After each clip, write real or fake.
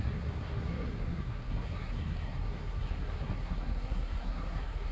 fake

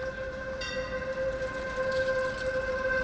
real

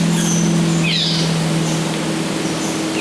real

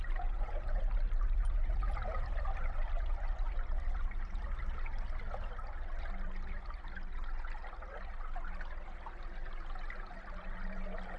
real